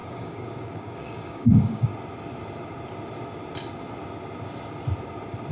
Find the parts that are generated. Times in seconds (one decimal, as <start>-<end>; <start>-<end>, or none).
0.0-1.9